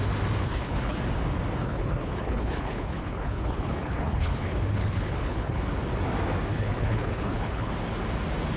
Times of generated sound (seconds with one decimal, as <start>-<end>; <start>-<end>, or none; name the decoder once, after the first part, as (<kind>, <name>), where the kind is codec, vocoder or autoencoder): 0.4-1.0 (codec, HILCodec); 1.6-5.6; 6.5-7.7